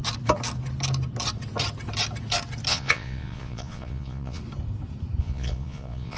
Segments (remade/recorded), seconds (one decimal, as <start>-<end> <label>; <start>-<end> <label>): 0.0-2.7 recorded; 2.7-4.4 remade; 4.4-5.2 recorded; 5.2-6.2 remade